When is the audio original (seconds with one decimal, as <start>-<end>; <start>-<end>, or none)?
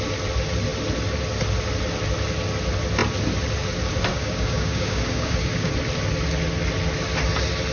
0.0-4.1; 5.7-7.7